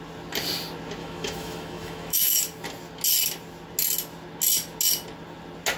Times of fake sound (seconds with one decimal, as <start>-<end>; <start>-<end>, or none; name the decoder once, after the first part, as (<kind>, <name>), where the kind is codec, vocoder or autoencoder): 1.0-2.4 (autoencoder, DAC-VAE)